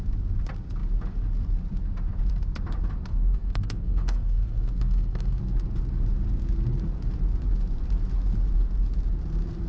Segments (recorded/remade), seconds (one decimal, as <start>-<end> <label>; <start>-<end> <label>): 0.0-3.1 recorded; 3.1-5.4 remade; 5.4-9.7 recorded

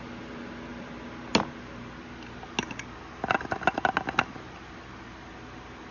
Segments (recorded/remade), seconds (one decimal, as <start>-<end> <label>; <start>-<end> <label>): 0.0-5.9 recorded

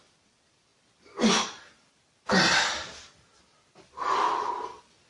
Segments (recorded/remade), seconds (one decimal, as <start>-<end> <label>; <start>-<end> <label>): 0.0-0.7 remade; 0.7-3.8 recorded; 3.8-5.1 remade

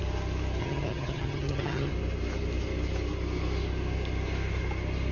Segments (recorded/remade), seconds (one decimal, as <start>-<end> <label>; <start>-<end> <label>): 0.0-0.6 recorded; 0.6-1.9 remade; 1.9-5.1 recorded

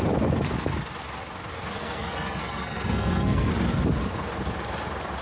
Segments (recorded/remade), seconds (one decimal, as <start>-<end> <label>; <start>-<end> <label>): 0.0-1.8 recorded; 1.8-3.5 remade; 3.5-5.2 recorded

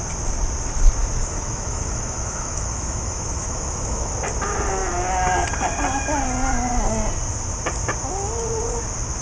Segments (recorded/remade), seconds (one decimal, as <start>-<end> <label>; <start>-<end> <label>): 0.0-1.0 recorded; 1.0-4.1 remade; 4.1-9.2 recorded

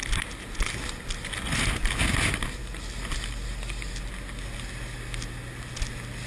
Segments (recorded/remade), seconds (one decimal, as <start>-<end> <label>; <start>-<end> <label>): 0.0-6.3 recorded